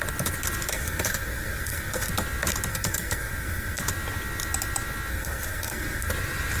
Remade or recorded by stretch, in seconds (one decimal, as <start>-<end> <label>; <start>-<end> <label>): 0.0-0.7 recorded; 0.7-2.1 remade; 2.1-2.7 recorded; 2.7-3.8 remade; 3.8-5.1 recorded; 5.1-6.1 remade; 6.1-6.6 recorded